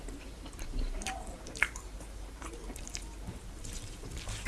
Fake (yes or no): yes